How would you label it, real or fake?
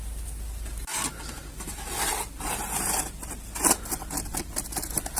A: real